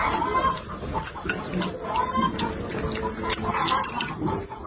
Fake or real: real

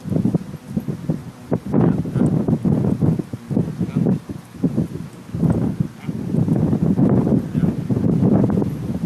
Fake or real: real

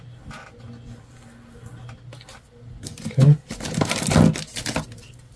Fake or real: real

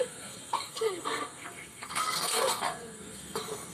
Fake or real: fake